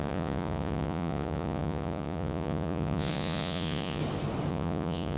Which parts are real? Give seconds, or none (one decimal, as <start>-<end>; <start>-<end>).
4.0-4.5